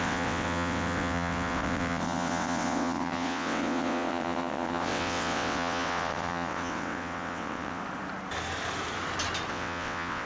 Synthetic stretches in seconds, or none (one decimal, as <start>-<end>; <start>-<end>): 0.0-7.8; 9.5-10.3